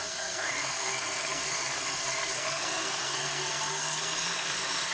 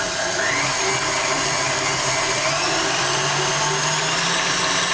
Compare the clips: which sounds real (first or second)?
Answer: second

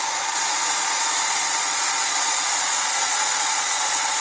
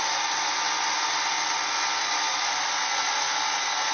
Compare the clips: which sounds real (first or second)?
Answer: second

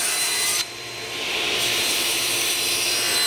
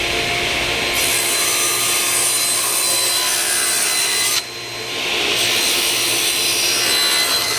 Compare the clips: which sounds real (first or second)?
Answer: second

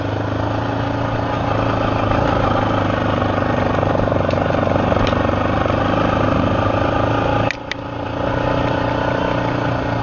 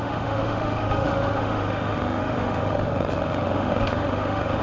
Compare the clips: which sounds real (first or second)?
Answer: first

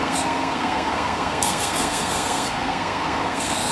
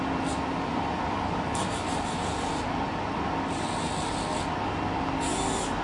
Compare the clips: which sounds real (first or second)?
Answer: second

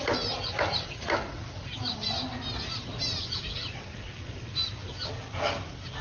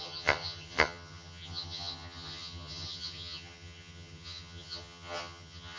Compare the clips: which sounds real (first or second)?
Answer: first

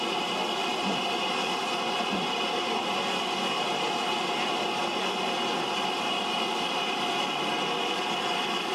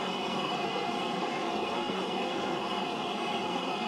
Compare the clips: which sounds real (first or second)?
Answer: first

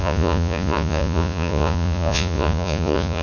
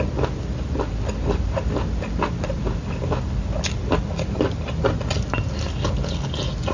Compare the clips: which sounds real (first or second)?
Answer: second